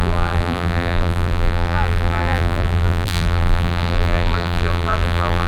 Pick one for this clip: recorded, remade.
remade